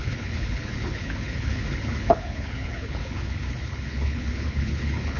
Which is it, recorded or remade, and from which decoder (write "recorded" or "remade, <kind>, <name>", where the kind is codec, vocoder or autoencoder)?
remade, codec, HILCodec